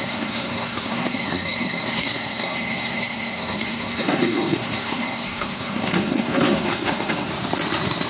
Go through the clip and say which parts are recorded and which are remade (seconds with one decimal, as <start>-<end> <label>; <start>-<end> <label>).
0.0-7.3 remade; 7.3-8.1 recorded